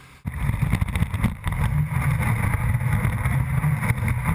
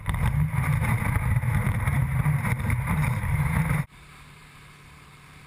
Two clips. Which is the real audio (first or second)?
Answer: first